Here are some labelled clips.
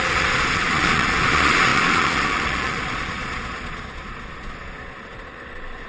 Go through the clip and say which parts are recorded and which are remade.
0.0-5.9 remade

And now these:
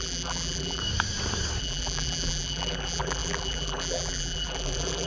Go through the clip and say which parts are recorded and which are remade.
0.0-0.8 remade; 0.8-1.6 recorded; 1.6-5.1 remade

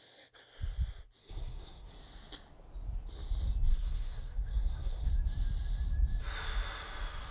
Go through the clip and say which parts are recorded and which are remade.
0.0-1.2 recorded; 1.2-1.9 remade; 1.9-3.7 recorded; 3.7-5.1 remade; 5.1-7.3 recorded

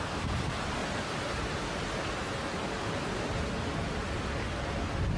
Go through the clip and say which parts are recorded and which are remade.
0.0-0.8 recorded; 0.8-1.8 remade; 1.8-5.2 recorded

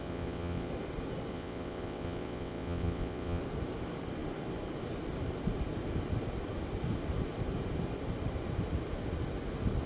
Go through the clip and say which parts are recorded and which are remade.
0.0-0.7 remade; 0.7-1.3 recorded; 1.3-3.4 remade; 3.4-9.9 recorded

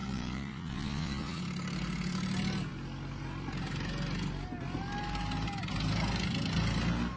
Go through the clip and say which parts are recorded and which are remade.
0.0-1.4 remade; 1.4-7.2 recorded

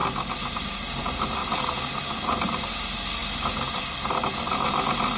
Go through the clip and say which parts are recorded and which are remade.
0.0-1.4 recorded; 1.4-2.1 remade; 2.1-5.2 recorded